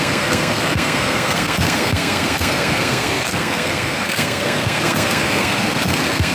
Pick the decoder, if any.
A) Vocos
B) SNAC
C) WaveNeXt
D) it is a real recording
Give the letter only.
B